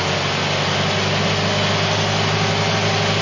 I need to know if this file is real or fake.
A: real